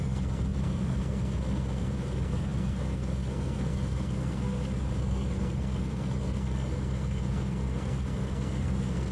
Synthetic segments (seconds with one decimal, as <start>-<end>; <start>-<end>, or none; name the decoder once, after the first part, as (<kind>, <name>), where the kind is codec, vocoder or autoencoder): 0.0-9.1 (codec, SNAC)